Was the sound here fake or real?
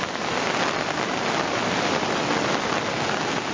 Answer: real